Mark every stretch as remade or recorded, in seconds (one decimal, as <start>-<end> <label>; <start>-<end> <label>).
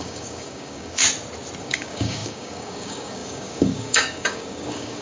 0.0-1.0 remade; 1.0-1.6 recorded; 1.6-5.0 remade